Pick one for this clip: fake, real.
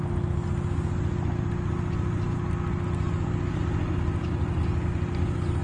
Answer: real